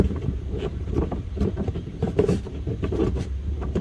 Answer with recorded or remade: remade